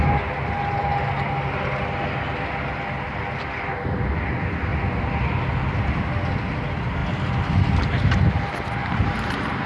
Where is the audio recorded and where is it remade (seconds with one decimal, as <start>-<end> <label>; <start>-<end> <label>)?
0.0-8.8 recorded; 8.8-9.7 remade